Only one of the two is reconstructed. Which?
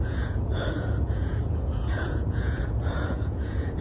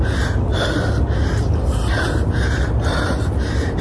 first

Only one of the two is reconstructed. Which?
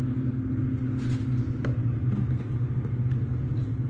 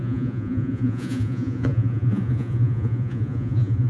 second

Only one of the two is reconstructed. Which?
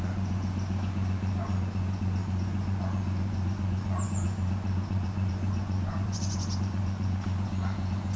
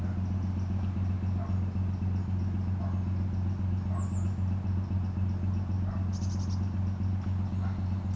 first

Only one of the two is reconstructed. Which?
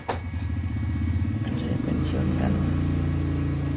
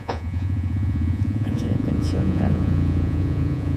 second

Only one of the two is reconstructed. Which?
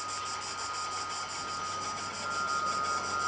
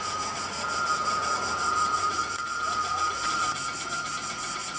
second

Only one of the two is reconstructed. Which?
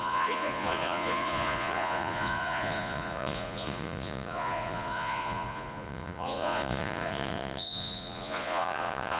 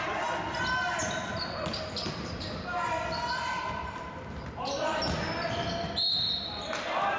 first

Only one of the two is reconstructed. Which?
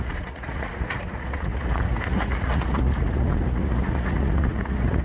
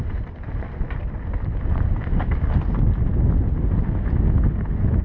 first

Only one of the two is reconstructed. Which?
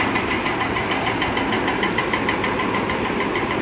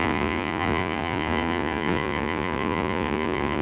second